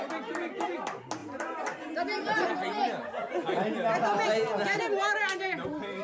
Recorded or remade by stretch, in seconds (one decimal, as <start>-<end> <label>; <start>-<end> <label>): 0.0-6.0 recorded